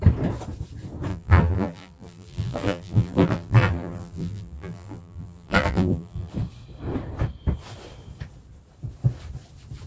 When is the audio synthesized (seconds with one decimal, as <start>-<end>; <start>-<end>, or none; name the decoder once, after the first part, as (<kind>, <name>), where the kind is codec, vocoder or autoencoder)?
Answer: 1.1-6.3 (vocoder, BigVGAN v2)